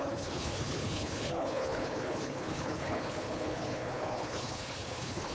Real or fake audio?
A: fake